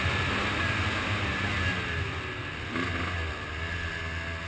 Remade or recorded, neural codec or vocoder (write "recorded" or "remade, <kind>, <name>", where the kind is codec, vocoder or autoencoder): recorded